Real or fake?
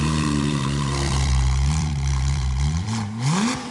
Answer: fake